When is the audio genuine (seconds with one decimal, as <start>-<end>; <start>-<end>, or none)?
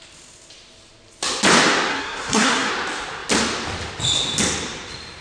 0.0-1.9; 2.7-5.2